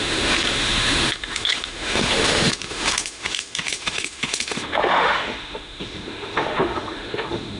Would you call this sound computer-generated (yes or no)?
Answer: yes